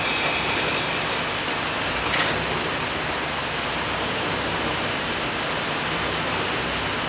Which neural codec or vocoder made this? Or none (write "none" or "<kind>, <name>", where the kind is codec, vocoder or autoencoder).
none